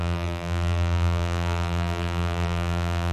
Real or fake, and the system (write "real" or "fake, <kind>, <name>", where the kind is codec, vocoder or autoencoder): fake, vocoder, BigVGAN v2